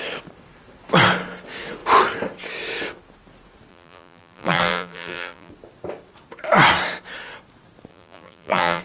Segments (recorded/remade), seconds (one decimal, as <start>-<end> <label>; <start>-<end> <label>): 0.0-3.7 recorded; 3.7-5.5 remade; 5.5-7.9 recorded; 7.9-8.8 remade